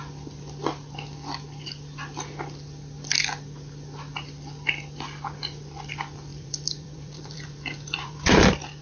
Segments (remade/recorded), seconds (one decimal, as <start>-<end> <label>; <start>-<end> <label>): 0.0-6.3 recorded; 6.3-8.4 remade; 8.4-8.8 recorded